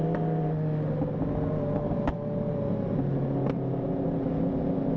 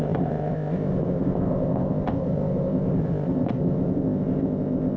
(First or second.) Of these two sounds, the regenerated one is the second